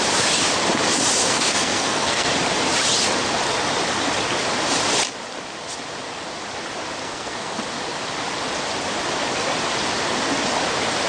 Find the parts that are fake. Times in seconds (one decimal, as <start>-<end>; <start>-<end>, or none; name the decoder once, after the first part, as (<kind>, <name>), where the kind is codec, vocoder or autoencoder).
1.2-2.3 (codec, SNAC); 7.0-7.6